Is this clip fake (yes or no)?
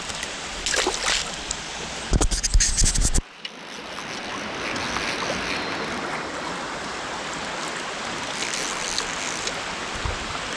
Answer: no